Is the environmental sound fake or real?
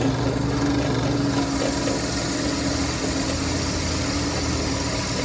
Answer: real